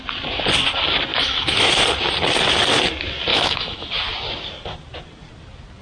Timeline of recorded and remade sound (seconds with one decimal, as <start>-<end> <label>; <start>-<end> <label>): 0.0-1.1 recorded; 1.1-1.7 remade; 1.7-3.3 recorded; 3.3-3.9 remade; 3.9-5.8 recorded